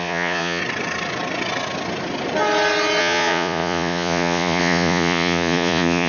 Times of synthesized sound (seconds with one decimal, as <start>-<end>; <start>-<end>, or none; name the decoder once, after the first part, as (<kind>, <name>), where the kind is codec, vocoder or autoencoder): 0.0-0.6 (vocoder, Vocos); 3.0-6.1